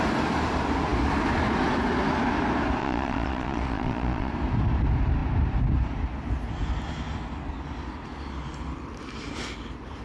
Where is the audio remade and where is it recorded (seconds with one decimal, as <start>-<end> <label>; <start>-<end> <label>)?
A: 0.0-2.8 recorded; 2.8-4.3 remade; 4.3-10.0 recorded